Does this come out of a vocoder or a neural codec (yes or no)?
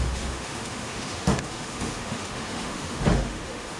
yes